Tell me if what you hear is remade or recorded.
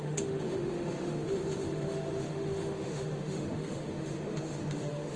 remade